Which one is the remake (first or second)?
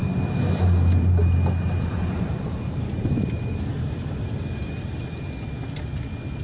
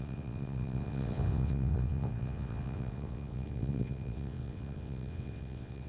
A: second